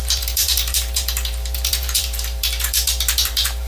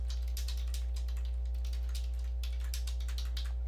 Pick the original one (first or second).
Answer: second